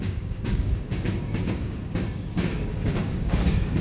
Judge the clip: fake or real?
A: fake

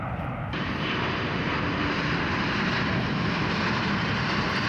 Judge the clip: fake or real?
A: fake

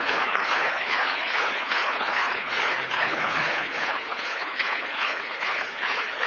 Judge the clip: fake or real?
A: fake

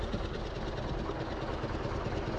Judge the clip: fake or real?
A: real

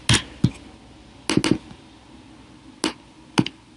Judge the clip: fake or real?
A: real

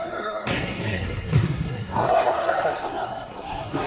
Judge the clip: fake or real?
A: fake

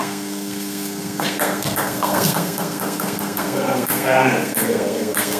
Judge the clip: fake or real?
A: fake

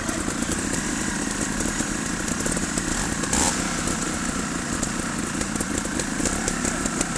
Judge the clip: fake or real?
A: real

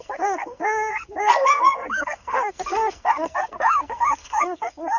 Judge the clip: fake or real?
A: fake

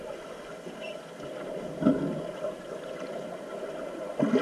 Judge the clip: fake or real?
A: real